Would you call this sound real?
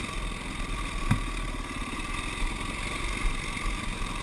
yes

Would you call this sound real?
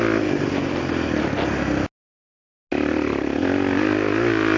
yes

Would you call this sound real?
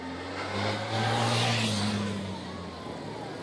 yes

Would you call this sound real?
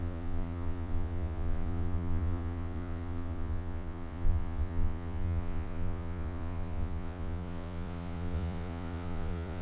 no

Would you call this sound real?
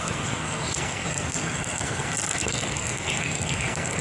no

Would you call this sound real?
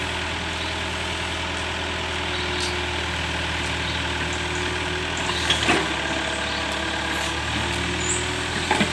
yes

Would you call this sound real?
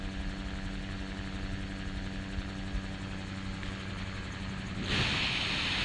yes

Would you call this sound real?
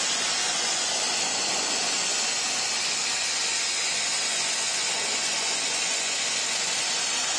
no